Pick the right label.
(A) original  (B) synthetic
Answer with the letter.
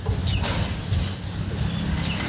A